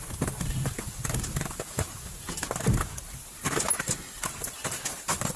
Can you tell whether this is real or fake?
real